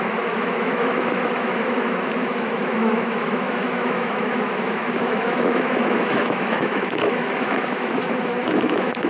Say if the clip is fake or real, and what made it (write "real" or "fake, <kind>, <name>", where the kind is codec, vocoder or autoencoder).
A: fake, autoencoder, DAC-VAE